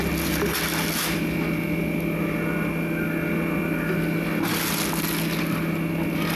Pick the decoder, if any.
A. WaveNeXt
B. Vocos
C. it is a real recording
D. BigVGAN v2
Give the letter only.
C